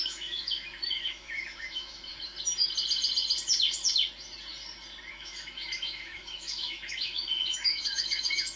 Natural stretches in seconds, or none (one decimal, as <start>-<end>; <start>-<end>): 2.1-5.1